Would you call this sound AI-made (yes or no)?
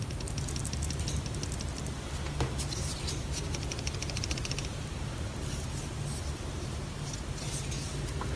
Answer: no